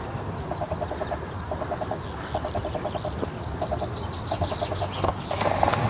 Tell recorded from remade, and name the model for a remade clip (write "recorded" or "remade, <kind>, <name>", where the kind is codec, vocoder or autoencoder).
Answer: recorded